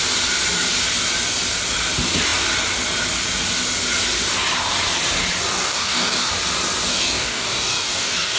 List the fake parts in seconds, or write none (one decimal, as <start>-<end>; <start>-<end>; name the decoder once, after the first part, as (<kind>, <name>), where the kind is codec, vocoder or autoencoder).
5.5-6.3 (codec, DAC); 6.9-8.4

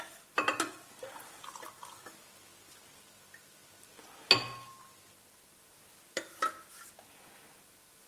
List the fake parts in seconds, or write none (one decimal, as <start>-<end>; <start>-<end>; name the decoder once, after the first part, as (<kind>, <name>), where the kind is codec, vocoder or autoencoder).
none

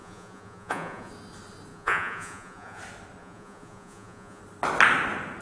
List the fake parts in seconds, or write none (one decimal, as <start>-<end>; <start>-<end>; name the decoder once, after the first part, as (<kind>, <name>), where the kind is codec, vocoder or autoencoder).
0.0-1.1 (vocoder, Vocos); 1.7-2.8; 3.2-4.4

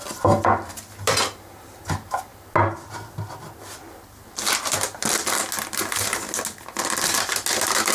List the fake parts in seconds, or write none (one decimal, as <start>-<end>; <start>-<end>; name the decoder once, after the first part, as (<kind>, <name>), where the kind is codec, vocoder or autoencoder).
none

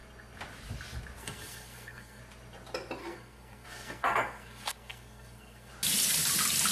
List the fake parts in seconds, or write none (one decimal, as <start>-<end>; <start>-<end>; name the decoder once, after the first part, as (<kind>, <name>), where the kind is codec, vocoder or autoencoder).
1.2-2.2 (codec, SNAC); 3.0-5.7

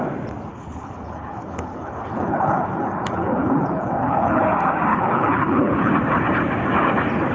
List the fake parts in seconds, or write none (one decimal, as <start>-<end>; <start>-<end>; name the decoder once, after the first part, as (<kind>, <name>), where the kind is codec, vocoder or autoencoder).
0.5-4.4 (codec, HILCodec); 4.9-5.9